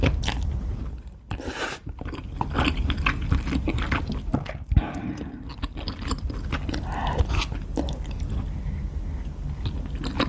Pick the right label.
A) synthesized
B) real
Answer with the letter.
B